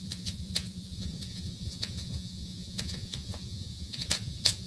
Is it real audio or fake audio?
fake